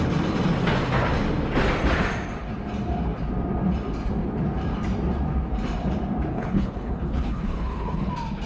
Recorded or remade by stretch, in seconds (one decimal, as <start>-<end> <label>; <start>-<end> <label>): 0.0-6.3 recorded; 6.3-8.1 remade; 8.1-8.5 recorded